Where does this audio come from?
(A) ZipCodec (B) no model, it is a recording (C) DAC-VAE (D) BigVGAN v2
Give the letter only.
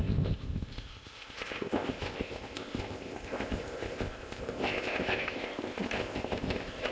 A